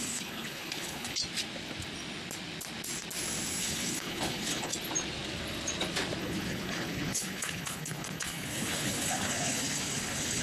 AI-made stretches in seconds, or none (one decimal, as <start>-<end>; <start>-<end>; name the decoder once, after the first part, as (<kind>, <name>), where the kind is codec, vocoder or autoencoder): 0.0-1.2 (codec, HILCodec); 3.6-4.7; 6.2-10.4